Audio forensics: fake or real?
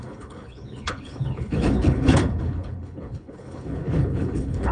fake